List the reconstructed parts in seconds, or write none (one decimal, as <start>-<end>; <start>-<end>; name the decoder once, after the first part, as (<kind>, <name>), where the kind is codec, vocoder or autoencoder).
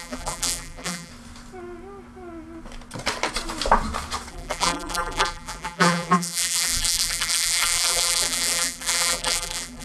0.0-1.1 (vocoder, BigVGAN v2); 4.3-9.8